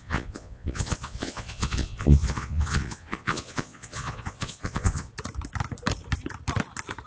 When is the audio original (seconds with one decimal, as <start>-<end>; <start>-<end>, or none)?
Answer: 5.1-7.1